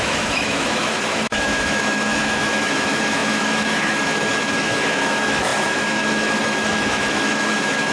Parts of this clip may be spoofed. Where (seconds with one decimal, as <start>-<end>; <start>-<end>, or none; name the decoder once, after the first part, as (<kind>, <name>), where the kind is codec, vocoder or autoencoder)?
0.0-7.9 (autoencoder, DAC-VAE)